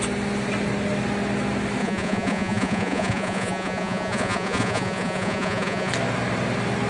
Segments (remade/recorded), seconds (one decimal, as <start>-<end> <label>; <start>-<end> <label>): 0.0-1.8 recorded; 1.8-5.9 remade; 5.9-6.9 recorded